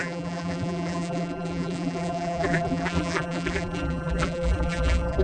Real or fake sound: fake